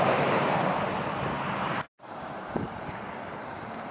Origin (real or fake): fake